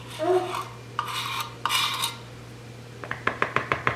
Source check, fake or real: real